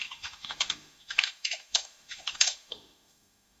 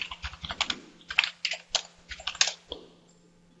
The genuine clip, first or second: second